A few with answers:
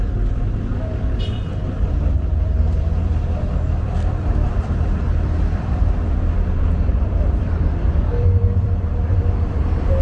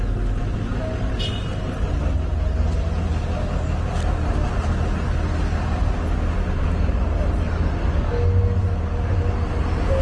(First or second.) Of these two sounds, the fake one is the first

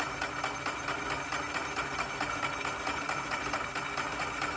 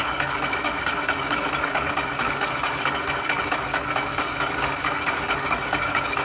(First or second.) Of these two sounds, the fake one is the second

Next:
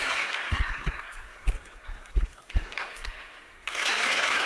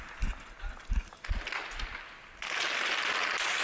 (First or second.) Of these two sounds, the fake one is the first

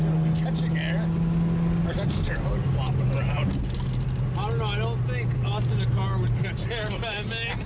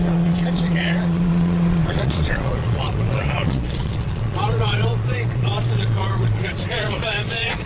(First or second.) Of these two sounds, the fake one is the second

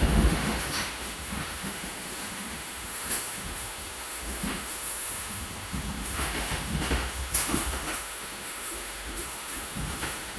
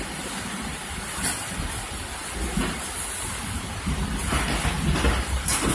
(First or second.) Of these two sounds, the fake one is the first